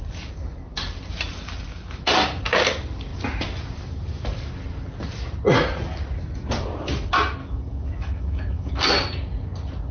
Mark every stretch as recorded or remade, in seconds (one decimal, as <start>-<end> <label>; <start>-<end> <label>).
0.0-7.4 recorded; 7.4-8.7 remade; 8.7-9.9 recorded